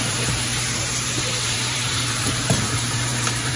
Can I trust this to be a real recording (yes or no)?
no